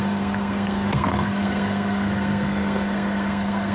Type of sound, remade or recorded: remade